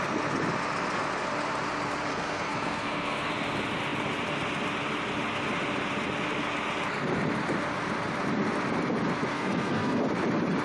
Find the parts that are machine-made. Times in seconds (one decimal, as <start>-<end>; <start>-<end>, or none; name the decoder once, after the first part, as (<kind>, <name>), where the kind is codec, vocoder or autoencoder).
2.1-3.3 (codec, SNAC); 9.3-10.0